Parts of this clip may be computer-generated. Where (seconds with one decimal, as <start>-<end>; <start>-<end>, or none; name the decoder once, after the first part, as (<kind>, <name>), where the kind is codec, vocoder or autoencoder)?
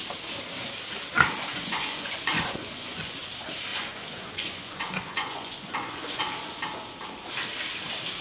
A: 1.5-3.2 (vocoder, Vocos); 3.7-6.2